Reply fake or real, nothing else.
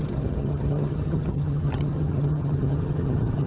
fake